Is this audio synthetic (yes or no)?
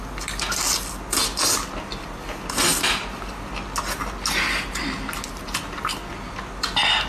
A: no